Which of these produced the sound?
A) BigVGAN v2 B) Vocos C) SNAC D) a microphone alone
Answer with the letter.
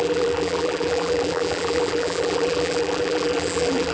A